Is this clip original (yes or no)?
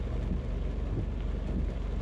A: yes